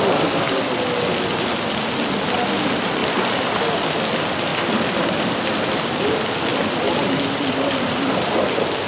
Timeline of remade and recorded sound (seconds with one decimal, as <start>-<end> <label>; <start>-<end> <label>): 0.0-3.0 recorded; 3.0-3.6 remade; 3.6-4.5 recorded; 4.5-6.1 remade; 6.1-6.5 recorded; 6.5-8.1 remade; 8.1-8.9 recorded